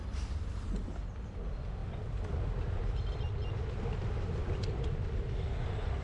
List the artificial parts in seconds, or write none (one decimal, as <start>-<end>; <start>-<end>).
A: 0.0-0.8; 4.4-5.1